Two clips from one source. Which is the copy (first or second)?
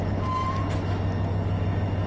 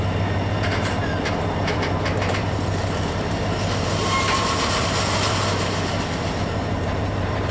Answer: second